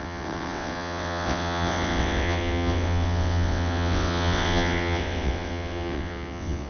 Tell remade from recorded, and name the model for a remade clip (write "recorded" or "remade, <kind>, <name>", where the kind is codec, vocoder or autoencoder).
remade, vocoder, WaveNeXt